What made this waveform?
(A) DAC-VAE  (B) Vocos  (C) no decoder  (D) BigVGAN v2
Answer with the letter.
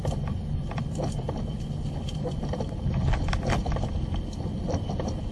D